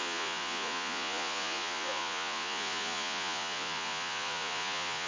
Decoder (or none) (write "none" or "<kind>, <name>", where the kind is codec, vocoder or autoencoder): vocoder, Vocos